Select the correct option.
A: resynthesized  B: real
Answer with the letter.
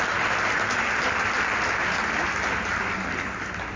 B